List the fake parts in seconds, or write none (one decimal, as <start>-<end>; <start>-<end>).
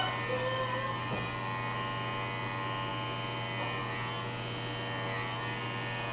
none